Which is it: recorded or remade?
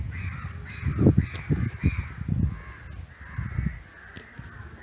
recorded